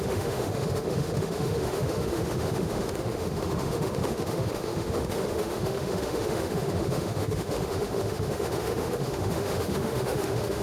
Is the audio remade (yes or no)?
yes